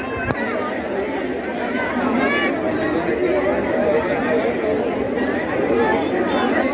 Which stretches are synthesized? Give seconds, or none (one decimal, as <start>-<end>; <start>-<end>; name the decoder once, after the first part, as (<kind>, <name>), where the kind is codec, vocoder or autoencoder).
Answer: none